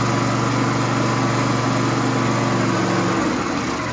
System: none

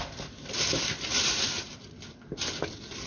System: none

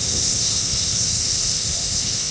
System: codec, ZipCodec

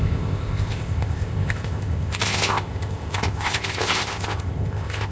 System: codec, ZipCodec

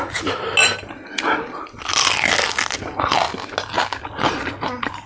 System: none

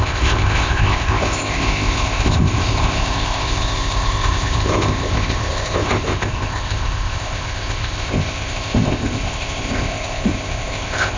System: codec, ZipCodec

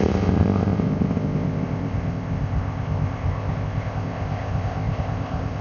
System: codec, ZipCodec